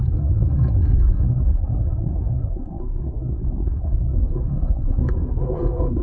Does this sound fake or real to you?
fake